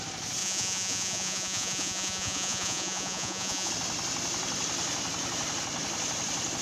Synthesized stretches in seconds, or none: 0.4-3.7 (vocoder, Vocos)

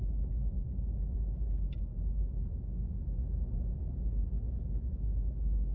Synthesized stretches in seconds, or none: none

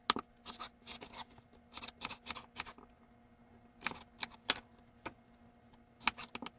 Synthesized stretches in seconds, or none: none

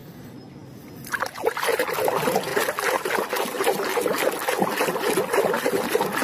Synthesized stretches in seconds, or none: none

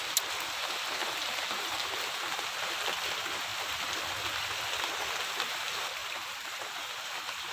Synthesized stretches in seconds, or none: 1.0-1.9 (vocoder, BigVGAN v2); 6.0-6.7

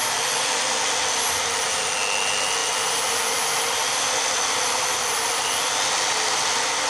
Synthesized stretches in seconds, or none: 2.6-5.9 (vocoder, BigVGAN v2)

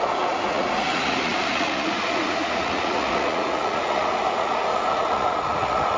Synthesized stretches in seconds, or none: 0.0-6.0 (vocoder, Vocos)